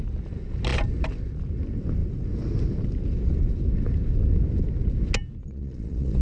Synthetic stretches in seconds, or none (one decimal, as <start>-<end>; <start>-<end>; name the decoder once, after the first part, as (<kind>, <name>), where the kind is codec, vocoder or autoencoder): 5.4-6.2 (vocoder, Vocos)